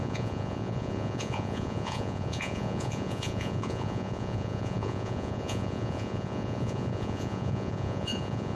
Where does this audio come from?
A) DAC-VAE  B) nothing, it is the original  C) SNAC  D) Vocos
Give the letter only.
D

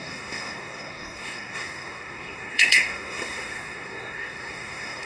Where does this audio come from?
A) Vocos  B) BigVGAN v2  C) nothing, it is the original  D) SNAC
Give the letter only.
D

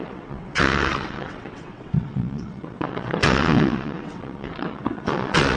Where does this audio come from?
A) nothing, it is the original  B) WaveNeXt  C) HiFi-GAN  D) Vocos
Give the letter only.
B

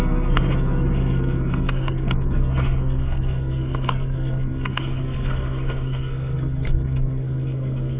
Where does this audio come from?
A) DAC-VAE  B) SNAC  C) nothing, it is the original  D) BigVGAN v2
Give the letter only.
B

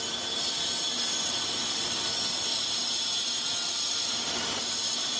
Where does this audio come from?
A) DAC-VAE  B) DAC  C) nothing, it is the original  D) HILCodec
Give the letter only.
C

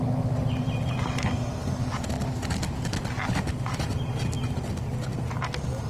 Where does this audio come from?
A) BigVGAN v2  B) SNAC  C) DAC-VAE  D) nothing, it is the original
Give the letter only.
D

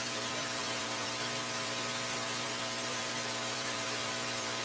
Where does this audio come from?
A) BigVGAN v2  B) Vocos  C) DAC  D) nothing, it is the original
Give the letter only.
A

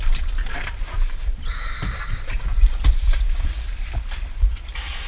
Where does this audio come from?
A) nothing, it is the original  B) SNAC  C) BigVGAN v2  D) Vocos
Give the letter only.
A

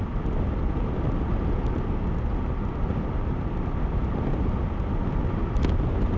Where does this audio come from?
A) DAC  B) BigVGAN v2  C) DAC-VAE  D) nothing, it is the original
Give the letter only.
D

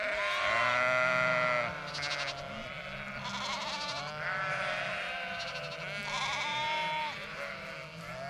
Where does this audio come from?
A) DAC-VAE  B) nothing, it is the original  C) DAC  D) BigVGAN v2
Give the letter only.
B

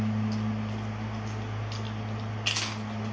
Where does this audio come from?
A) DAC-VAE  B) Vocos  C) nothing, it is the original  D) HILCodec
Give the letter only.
C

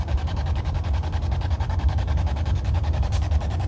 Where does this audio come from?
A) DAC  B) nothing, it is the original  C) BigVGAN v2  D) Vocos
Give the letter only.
A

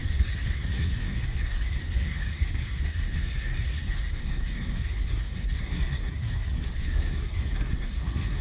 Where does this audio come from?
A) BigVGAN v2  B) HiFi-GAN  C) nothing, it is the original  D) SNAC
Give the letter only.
D